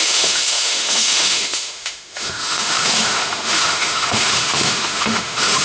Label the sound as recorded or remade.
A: remade